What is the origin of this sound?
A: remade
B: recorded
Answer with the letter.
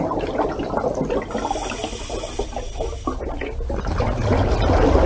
B